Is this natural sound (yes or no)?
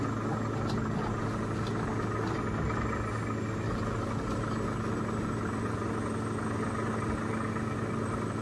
yes